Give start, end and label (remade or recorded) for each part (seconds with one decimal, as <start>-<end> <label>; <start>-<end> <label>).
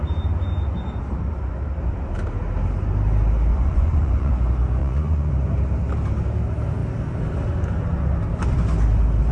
0.0-3.5 recorded; 3.5-4.3 remade; 4.3-4.8 recorded; 4.8-5.3 remade; 5.3-9.3 recorded